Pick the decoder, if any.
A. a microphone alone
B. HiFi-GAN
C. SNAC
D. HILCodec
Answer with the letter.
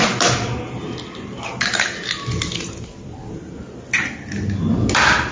A